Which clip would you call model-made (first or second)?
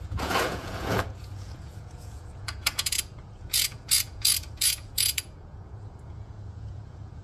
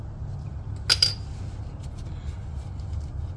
first